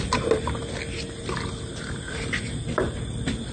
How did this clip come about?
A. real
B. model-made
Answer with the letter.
A